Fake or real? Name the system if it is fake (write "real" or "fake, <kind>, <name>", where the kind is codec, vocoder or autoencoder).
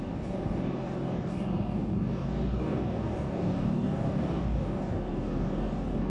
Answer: fake, codec, DAC